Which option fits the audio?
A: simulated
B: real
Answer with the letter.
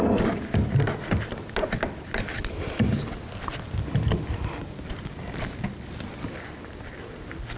B